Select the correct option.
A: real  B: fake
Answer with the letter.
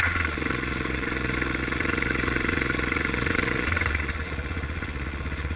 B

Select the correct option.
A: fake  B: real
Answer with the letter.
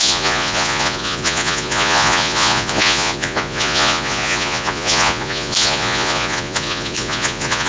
A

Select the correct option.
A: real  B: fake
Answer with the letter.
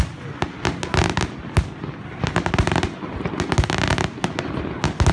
A